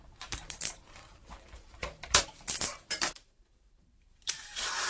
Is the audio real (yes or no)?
no